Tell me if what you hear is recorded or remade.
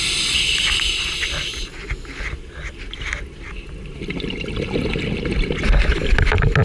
recorded